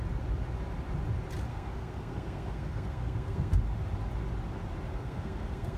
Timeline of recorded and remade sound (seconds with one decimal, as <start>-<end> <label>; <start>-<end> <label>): 0.0-1.5 recorded; 1.5-3.6 remade; 3.6-4.9 recorded; 4.9-5.8 remade